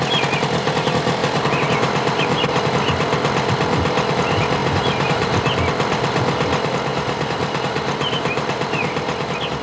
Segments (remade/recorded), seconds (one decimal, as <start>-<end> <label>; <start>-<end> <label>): 0.0-1.2 recorded; 1.2-2.6 remade; 2.6-4.6 recorded; 4.6-5.6 remade; 5.6-6.9 recorded; 6.9-8.8 remade; 8.8-9.6 recorded